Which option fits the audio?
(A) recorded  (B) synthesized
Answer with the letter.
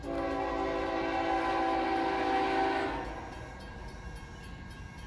A